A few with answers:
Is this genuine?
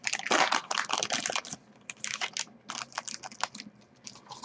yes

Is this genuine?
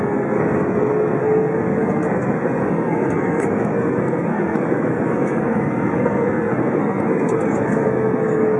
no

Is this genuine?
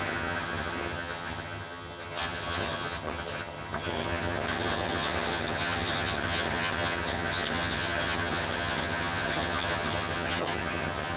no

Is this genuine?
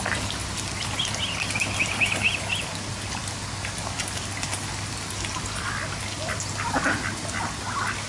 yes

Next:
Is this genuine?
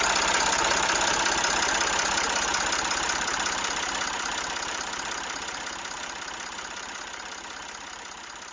yes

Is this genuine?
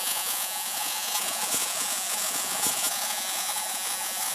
no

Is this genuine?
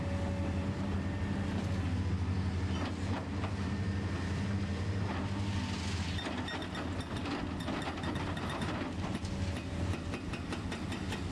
yes